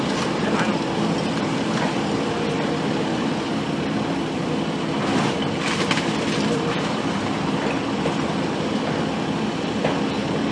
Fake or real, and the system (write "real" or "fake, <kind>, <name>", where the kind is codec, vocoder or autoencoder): fake, vocoder, BigVGAN v2